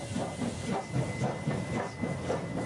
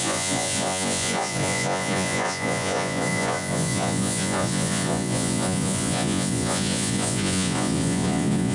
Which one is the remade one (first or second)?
second